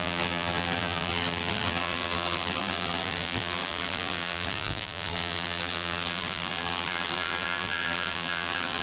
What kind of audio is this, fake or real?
fake